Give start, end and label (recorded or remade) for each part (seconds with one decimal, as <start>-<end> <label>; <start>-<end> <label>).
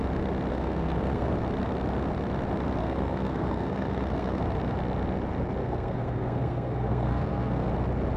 0.0-0.5 recorded; 0.5-1.3 remade; 1.3-2.8 recorded; 2.8-4.4 remade; 4.4-5.6 recorded; 5.6-7.7 remade; 7.7-8.2 recorded